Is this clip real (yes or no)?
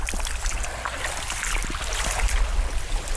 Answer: yes